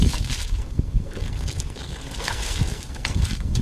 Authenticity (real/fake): fake